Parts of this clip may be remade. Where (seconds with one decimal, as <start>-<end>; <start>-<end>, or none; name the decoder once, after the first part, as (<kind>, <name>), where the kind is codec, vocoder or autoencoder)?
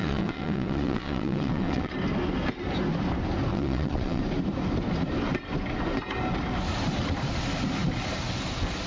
0.0-1.9 (vocoder, WaveNeXt); 3.5-4.2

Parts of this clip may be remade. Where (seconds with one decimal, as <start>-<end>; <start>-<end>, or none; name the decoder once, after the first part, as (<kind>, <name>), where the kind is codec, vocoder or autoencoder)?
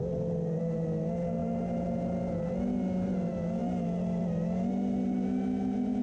none